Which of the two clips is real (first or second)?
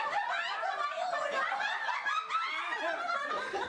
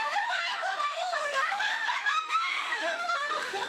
first